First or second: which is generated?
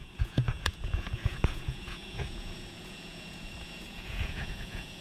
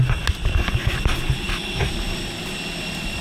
first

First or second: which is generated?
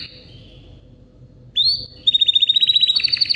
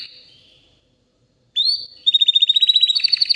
second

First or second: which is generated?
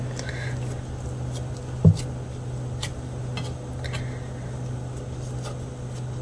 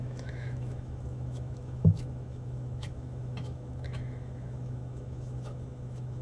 second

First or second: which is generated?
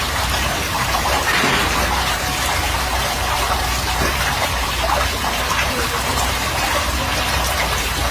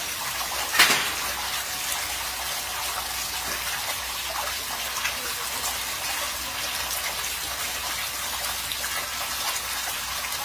first